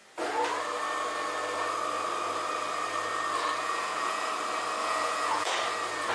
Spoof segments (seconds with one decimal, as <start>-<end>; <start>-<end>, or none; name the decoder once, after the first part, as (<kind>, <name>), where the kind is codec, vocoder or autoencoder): 3.6-4.3 (vocoder, Vocos); 4.8-5.5